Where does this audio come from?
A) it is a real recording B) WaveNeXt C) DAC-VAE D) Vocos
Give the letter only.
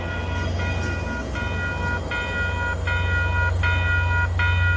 A